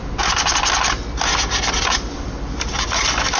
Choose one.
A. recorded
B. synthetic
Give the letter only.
A